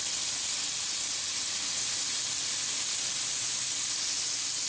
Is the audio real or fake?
real